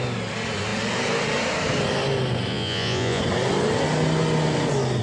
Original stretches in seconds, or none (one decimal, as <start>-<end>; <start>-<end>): 0.0-2.5; 3.2-5.0